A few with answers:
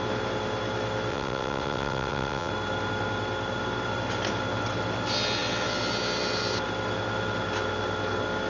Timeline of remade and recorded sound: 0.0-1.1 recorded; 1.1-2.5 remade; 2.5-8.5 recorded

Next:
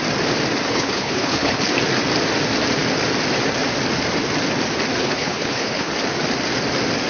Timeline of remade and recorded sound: 0.0-0.7 recorded; 0.7-1.7 remade; 1.7-5.0 recorded; 5.0-5.9 remade; 5.9-7.1 recorded

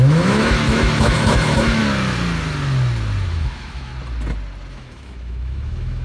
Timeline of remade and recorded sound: 0.0-1.8 remade; 1.8-3.3 recorded; 3.3-3.9 remade; 3.9-4.7 recorded; 4.7-6.0 remade

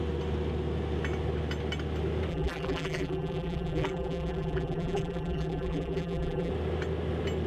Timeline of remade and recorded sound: 0.0-2.3 recorded; 2.3-6.5 remade; 6.5-7.5 recorded

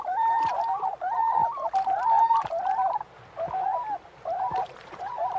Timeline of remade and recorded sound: 0.0-1.4 remade; 1.4-4.6 recorded; 4.6-5.4 remade

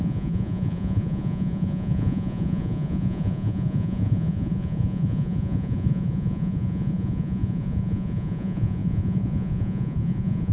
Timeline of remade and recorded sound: 0.0-10.5 remade